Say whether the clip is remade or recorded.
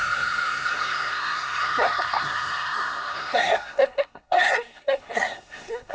remade